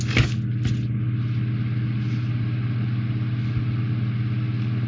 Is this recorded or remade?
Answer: recorded